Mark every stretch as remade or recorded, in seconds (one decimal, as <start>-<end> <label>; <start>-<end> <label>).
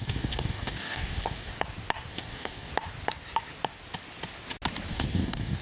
0.0-1.5 remade; 1.5-2.1 recorded; 2.1-2.7 remade; 2.7-4.9 recorded; 4.9-5.6 remade